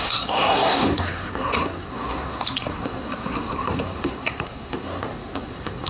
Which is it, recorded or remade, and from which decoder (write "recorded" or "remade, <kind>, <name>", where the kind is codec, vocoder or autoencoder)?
remade, codec, SNAC